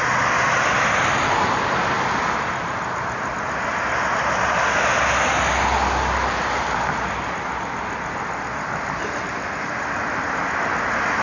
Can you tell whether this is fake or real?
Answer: real